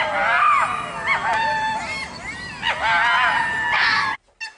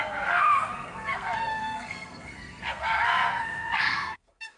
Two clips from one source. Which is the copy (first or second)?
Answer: second